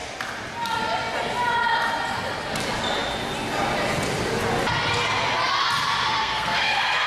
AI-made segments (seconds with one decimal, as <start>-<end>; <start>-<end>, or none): 6.1-7.1